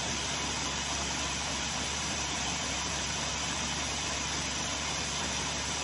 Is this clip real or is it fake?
fake